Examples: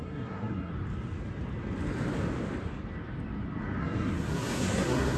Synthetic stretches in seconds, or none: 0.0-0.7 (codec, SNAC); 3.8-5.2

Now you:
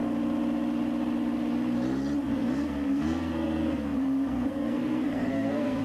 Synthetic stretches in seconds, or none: 2.3-5.8 (codec, SNAC)

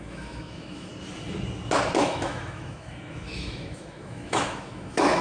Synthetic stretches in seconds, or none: 0.0-0.9 (autoencoder, DAC-VAE); 2.0-5.2

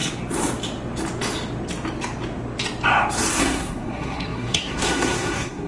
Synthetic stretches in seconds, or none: 3.4-5.7 (codec, SNAC)